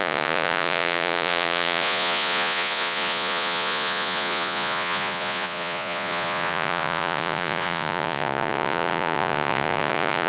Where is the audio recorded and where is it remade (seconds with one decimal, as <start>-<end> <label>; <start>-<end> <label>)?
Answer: 0.0-10.3 remade